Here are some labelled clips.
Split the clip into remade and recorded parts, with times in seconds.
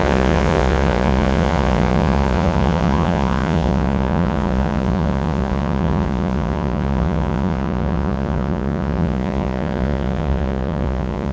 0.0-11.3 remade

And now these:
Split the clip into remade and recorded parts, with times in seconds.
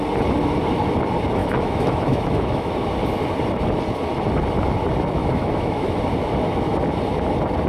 0.0-1.4 recorded; 1.4-2.7 remade; 2.7-5.2 recorded; 5.2-6.0 remade; 6.0-7.7 recorded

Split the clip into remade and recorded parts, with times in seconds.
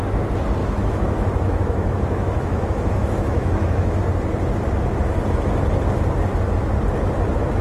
0.0-0.6 recorded; 0.6-4.0 remade; 4.0-7.6 recorded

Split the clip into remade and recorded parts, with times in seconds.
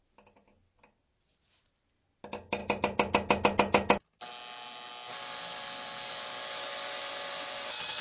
0.0-8.0 recorded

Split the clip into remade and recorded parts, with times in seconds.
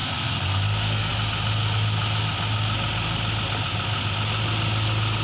0.0-1.1 remade; 1.1-5.2 recorded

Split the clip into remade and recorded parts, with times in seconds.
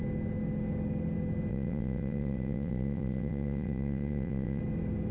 0.0-1.5 recorded; 1.5-4.6 remade; 4.6-5.1 recorded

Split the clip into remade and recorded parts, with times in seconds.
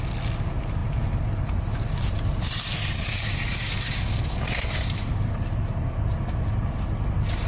0.0-0.8 recorded; 0.8-5.3 remade; 5.3-7.5 recorded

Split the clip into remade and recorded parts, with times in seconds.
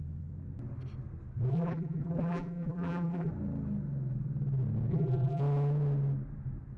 0.0-1.5 recorded; 1.5-3.3 remade; 3.3-4.9 recorded; 4.9-5.4 remade; 5.4-6.8 recorded